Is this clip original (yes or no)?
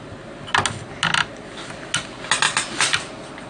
yes